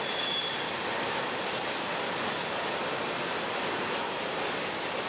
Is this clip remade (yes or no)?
no